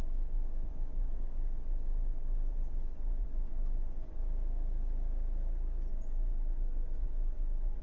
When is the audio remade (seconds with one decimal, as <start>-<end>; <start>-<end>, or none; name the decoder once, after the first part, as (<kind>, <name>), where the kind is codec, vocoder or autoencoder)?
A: 0.0-4.2 (vocoder, Vocos); 5.9-7.8